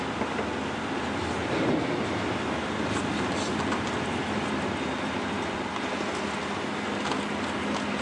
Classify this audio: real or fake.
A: real